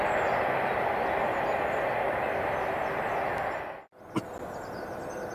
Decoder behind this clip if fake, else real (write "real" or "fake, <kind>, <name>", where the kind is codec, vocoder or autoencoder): real